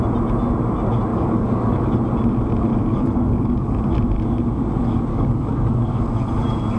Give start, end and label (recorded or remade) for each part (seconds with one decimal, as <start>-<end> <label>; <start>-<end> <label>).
0.0-1.1 recorded; 1.1-1.9 remade; 1.9-2.7 recorded; 2.7-3.8 remade; 3.8-5.1 recorded; 5.1-6.0 remade; 6.0-6.8 recorded